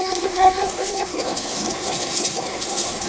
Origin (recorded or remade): remade